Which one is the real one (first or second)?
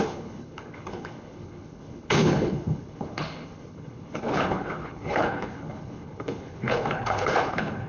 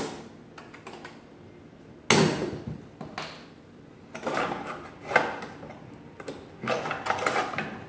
second